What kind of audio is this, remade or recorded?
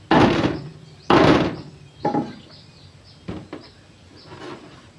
recorded